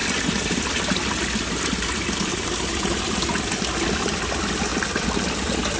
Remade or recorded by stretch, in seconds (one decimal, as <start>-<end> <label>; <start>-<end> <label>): 0.0-2.3 recorded; 2.3-3.2 remade; 3.2-4.7 recorded; 4.7-5.8 remade